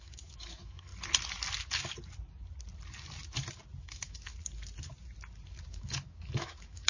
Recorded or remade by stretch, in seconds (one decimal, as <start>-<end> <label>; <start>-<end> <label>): 0.0-0.9 remade; 0.9-3.8 recorded; 3.8-4.3 remade; 4.3-5.7 recorded; 5.7-6.9 remade